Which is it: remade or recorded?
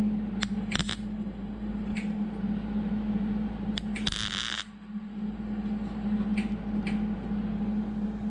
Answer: recorded